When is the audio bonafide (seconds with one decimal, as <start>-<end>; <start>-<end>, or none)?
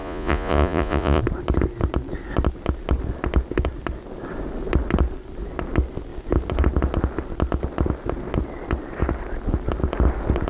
1.2-10.5